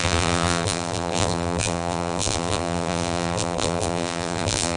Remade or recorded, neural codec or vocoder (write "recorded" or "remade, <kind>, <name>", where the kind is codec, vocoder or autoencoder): remade, vocoder, BigVGAN v2